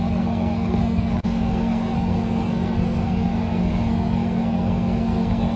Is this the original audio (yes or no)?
no